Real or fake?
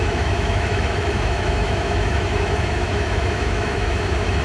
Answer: fake